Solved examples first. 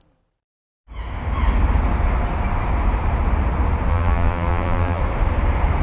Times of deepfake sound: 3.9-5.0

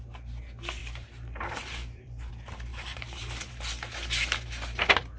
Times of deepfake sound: 0.8-2.3; 2.7-3.5

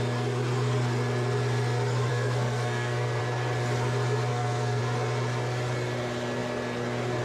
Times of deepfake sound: 2.1-3.2; 4.3-4.8

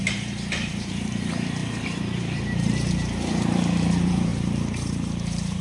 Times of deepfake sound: 0.0-5.6

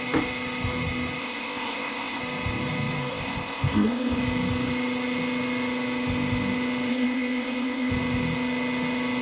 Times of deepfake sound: 1.2-2.2; 3.1-4.2; 6.9-7.9

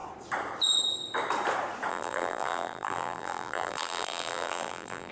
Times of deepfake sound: 1.9-5.1

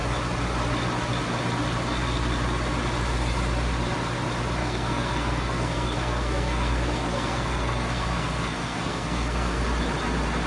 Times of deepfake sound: 4.6-9.6